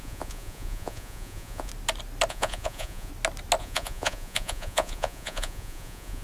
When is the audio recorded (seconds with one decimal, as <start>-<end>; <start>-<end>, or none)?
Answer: 1.7-2.3; 3.1-3.6

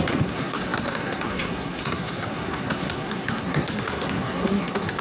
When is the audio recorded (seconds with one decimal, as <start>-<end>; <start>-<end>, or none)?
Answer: none